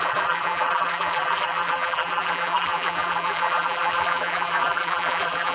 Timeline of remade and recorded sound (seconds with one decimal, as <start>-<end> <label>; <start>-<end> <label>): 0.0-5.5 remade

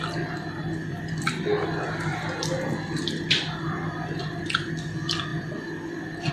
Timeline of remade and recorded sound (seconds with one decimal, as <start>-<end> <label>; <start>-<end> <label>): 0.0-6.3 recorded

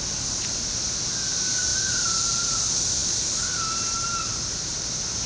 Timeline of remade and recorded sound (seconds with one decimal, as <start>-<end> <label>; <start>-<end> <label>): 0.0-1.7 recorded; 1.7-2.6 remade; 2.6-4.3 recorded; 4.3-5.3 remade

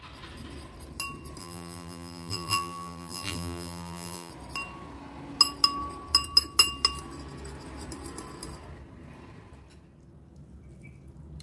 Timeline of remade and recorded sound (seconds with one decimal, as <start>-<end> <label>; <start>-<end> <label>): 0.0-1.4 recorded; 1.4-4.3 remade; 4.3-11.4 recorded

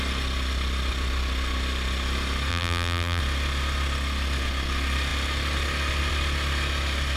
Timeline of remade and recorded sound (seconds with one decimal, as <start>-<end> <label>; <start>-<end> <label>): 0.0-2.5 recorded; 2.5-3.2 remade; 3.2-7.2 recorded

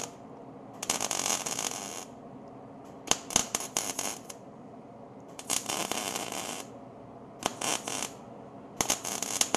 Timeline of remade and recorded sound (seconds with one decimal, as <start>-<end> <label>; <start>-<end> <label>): 0.0-3.4 recorded; 3.4-6.7 remade; 6.7-9.6 recorded

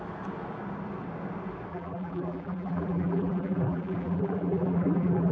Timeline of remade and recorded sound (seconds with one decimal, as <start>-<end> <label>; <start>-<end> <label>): 0.0-1.7 recorded; 1.7-5.3 remade